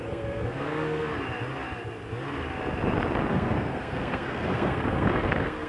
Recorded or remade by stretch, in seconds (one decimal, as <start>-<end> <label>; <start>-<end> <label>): 0.0-1.1 remade; 1.1-3.3 recorded; 3.3-5.7 remade